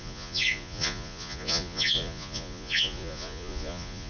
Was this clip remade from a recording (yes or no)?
yes